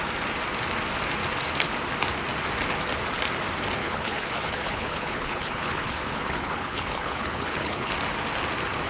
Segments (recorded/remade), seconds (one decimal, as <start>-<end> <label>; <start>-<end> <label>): 0.0-3.8 recorded; 3.8-7.9 remade; 7.9-8.9 recorded